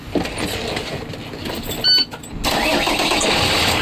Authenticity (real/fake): real